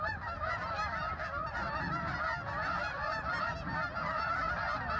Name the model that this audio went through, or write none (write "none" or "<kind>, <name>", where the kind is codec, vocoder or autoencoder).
none